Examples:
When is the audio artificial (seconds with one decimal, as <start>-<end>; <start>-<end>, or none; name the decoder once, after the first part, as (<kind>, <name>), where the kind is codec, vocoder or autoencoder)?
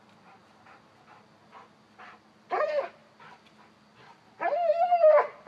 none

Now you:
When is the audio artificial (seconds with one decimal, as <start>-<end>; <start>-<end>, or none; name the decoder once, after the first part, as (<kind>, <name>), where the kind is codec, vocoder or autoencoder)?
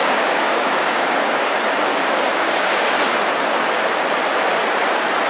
0.0-1.5 (codec, DAC); 1.9-3.2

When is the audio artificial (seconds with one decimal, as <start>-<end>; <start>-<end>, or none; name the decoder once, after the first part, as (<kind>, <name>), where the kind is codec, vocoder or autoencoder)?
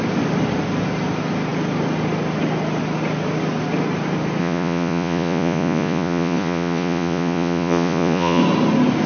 4.4-8.4 (vocoder, Vocos)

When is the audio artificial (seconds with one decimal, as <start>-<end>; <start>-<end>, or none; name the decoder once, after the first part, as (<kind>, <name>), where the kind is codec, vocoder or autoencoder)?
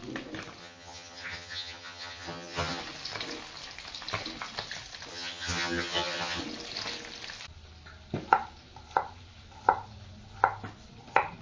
0.6-2.8 (vocoder, HiFi-GAN); 5.1-6.4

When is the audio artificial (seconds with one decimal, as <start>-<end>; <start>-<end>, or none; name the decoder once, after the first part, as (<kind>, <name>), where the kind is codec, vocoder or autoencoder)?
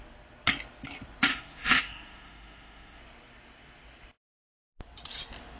1.3-3.0 (autoencoder, DAC-VAE)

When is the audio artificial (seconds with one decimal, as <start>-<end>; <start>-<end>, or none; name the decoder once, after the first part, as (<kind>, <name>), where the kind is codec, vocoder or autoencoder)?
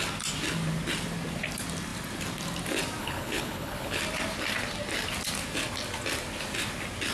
3.0-4.0 (codec, HILCodec)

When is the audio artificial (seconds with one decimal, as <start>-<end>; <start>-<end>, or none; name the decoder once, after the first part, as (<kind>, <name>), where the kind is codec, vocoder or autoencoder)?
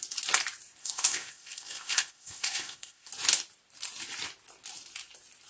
0.8-3.1 (codec, ZipCodec)